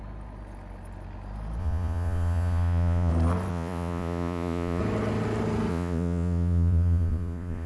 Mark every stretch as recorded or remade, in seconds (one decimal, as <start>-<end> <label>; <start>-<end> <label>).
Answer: 0.0-1.6 recorded; 1.6-3.1 remade; 3.1-3.5 recorded; 3.5-4.8 remade; 4.8-5.7 recorded; 5.7-7.7 remade